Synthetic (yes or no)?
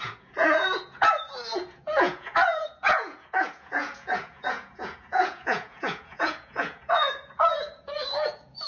yes